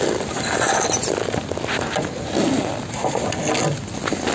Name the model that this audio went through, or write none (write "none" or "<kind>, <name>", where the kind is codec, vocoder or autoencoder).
none